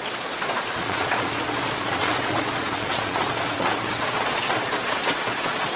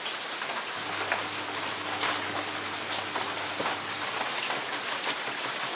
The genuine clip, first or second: second